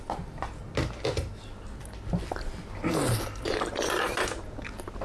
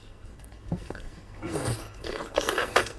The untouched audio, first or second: first